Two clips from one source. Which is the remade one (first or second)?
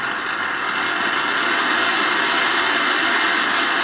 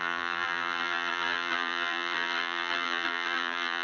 second